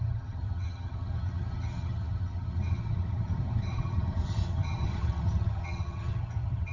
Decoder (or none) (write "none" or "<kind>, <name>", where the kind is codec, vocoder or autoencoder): vocoder, HiFi-GAN